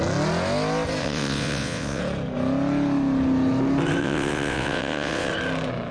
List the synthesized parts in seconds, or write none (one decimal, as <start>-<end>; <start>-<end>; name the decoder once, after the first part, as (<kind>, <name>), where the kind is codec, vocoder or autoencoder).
1.0-2.0 (vocoder, WaveNeXt); 4.0-5.3